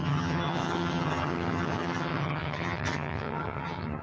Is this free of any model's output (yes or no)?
no